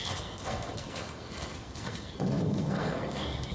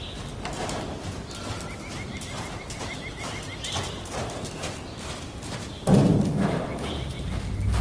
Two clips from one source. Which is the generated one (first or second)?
first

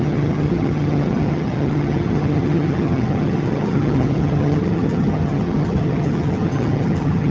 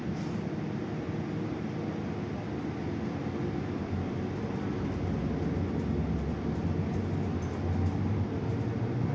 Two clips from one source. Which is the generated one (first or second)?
first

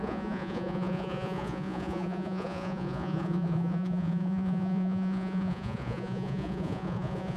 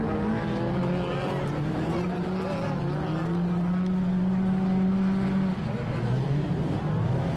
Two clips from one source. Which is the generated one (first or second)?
first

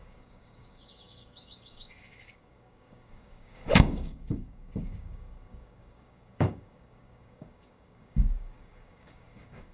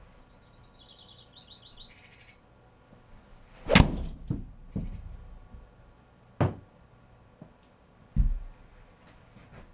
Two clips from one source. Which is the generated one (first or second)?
first